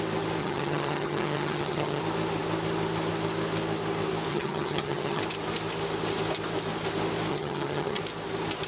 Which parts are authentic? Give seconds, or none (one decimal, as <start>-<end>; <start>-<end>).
0.0-0.4; 2.0-4.3; 5.2-7.3; 8.0-8.7